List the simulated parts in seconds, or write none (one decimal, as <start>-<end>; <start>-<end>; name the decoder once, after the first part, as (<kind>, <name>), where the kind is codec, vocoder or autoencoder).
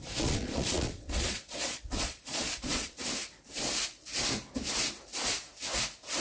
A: 0.0-3.0 (vocoder, Vocos)